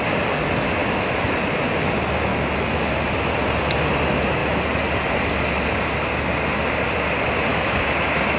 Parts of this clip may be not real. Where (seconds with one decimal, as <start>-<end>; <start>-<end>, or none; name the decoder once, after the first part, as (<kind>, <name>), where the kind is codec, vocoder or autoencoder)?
0.8-1.4 (autoencoder, DAC-VAE); 2.3-2.9; 7.5-8.4